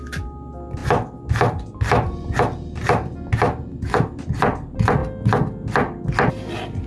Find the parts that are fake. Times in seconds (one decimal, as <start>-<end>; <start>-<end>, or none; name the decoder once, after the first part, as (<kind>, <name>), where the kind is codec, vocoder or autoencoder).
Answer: none

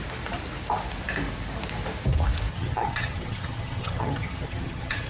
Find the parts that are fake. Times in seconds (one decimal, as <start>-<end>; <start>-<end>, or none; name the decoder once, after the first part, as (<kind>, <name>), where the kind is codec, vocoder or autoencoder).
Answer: 2.5-5.1 (vocoder, HiFi-GAN)

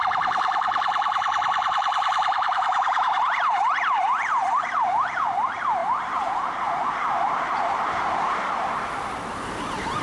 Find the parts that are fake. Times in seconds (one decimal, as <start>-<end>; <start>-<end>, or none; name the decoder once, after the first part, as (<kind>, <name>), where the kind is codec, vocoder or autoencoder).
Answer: 0.0-10.0 (vocoder, BigVGAN v2)

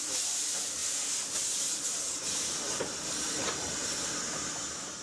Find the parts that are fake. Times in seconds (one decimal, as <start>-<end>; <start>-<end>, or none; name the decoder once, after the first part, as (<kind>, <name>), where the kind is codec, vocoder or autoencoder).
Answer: none

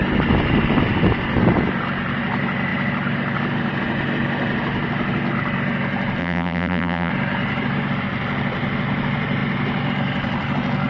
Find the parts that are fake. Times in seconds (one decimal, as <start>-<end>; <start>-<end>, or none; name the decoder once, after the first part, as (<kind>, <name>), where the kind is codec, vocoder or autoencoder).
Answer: 6.2-7.1 (vocoder, BigVGAN v2)

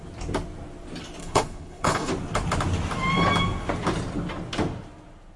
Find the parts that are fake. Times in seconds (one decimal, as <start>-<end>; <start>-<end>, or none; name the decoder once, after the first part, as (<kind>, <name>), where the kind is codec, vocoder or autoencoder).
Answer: 1.2-2.1 (codec, HILCodec)